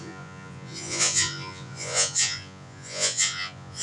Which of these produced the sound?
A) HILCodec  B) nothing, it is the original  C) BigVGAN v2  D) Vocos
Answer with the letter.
D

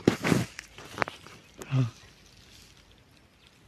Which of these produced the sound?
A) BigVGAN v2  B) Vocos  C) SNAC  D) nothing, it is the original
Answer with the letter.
D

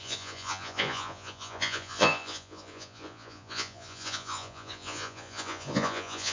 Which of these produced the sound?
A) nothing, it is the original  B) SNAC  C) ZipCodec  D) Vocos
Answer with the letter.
D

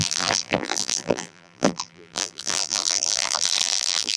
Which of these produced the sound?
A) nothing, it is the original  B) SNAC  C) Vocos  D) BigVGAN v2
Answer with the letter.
D